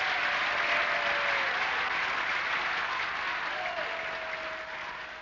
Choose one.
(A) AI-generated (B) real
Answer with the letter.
B